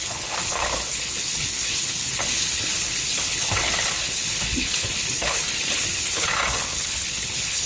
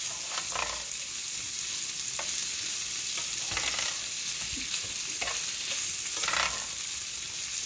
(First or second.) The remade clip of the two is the first